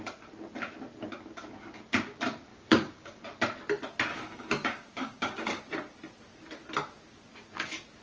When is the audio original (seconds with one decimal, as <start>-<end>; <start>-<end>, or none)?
0.0-2.5; 3.2-4.1; 5.6-8.0